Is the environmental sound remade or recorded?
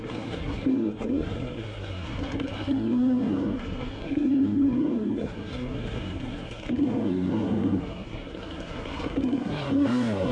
remade